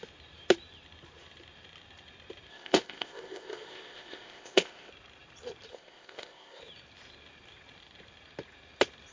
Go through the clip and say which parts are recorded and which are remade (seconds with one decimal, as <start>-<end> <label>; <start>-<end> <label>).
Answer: 0.0-2.5 recorded; 2.5-4.9 remade; 4.9-5.7 recorded; 5.7-6.6 remade; 6.6-9.1 recorded